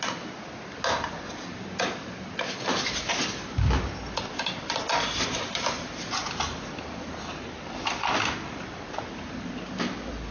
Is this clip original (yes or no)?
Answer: yes